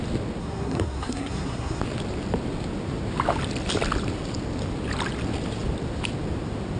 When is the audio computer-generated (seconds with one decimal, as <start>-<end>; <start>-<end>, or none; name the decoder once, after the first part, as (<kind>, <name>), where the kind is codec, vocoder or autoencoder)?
0.4-1.8 (codec, SNAC)